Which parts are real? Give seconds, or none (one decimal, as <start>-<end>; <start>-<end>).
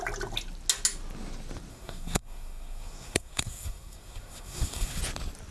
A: 0.0-1.7; 5.0-5.5